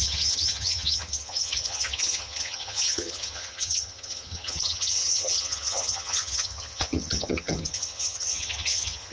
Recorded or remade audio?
remade